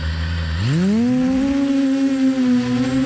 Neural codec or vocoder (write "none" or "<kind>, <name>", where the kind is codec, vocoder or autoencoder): none